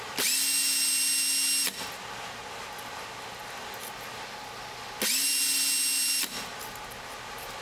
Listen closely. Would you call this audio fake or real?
real